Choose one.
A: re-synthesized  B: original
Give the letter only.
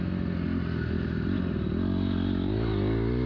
B